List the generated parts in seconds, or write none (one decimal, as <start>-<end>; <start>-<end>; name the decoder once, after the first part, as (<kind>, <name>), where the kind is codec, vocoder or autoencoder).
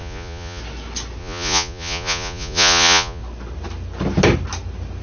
0.0-0.6 (vocoder, Vocos); 1.2-3.2